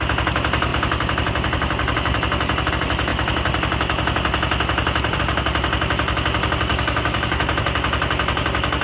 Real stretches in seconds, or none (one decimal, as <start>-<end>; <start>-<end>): 0.0-6.7; 7.4-8.8